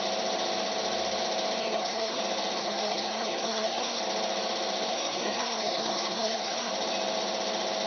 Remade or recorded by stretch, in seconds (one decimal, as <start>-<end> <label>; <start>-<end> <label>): 0.0-1.6 recorded; 1.6-2.2 remade; 2.2-2.6 recorded; 2.6-4.0 remade; 4.0-4.9 recorded; 4.9-6.7 remade; 6.7-7.9 recorded